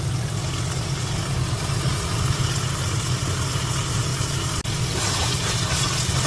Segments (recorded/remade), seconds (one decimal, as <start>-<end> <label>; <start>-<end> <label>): 0.0-6.3 recorded